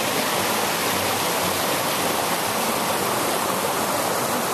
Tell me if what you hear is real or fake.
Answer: fake